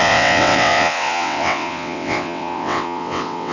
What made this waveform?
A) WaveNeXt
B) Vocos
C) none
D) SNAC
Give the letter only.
A